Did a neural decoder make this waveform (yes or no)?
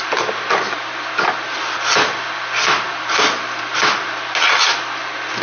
no